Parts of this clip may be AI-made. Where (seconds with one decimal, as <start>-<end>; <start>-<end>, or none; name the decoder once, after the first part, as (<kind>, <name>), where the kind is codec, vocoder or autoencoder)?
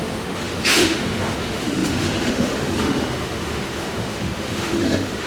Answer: 0.0-5.3 (autoencoder, DAC-VAE)